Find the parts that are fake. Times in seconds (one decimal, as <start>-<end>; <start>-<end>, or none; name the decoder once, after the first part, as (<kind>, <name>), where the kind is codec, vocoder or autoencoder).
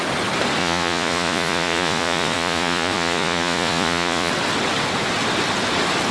0.6-4.3 (vocoder, Vocos)